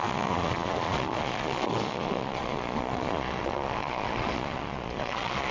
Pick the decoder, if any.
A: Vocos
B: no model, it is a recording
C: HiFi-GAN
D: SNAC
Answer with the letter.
A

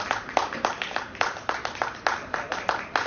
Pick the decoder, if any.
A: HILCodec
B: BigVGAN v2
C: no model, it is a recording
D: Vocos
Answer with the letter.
C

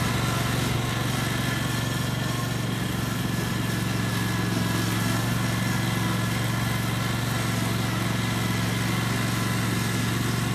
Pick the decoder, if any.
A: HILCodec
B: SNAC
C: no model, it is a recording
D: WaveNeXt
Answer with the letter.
C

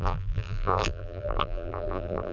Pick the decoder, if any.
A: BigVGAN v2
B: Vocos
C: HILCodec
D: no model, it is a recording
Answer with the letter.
A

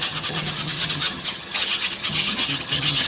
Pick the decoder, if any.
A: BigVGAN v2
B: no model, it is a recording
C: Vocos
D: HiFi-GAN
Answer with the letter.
D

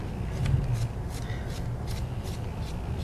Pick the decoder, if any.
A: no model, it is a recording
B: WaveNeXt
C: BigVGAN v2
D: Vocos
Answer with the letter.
A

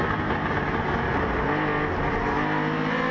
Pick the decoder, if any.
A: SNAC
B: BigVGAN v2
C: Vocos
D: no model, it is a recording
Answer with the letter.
D